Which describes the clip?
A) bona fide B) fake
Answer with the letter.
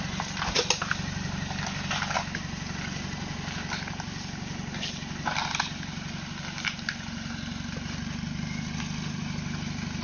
A